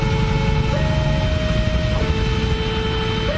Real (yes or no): yes